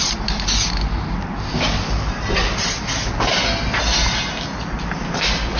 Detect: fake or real real